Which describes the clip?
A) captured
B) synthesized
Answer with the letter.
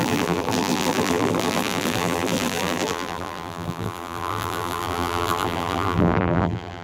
B